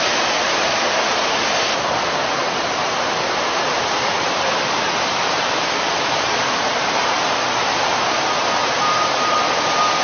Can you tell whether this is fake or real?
fake